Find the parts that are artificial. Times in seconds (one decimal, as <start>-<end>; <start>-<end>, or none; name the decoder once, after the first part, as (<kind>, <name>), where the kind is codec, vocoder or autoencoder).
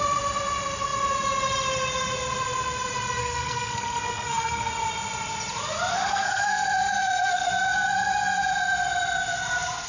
3.2-4.7 (codec, SNAC); 5.9-7.5